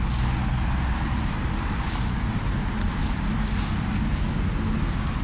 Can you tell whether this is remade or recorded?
recorded